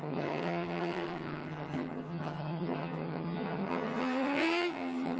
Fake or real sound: fake